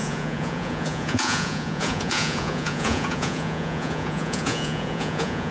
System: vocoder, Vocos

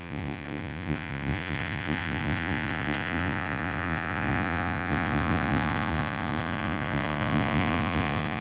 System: vocoder, Vocos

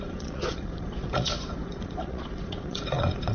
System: vocoder, Vocos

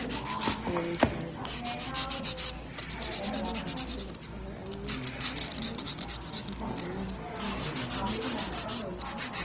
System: none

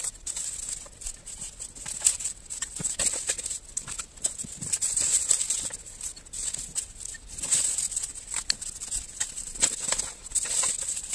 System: none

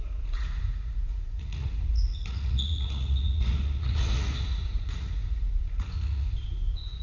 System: vocoder, Vocos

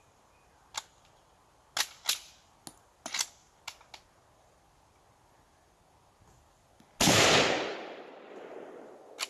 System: none